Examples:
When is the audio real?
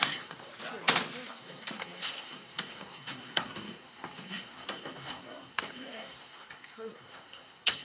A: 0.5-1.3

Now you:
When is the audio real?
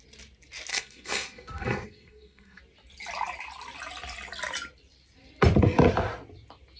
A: 0.0-0.7; 2.6-6.8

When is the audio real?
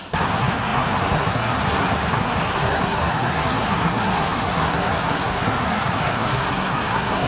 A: none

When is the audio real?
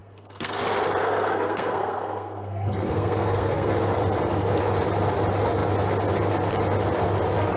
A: 0.6-1.0; 3.7-7.6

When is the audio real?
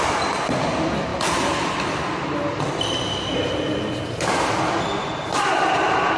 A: 0.0-6.2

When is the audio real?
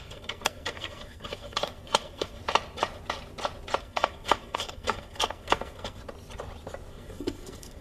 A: 2.4-3.8; 6.0-6.9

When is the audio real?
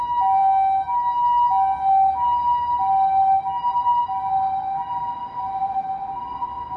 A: 0.0-6.8